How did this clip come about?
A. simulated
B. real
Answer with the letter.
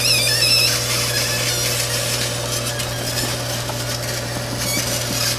B